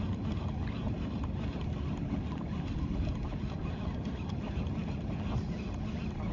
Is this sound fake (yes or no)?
no